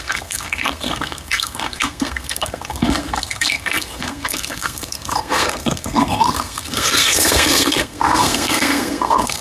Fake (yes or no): yes